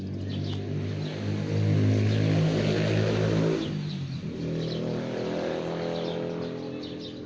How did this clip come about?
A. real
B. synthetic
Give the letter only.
A